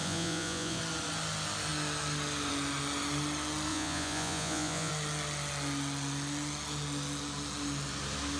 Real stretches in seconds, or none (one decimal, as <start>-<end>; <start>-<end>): 0.8-3.7; 4.9-8.4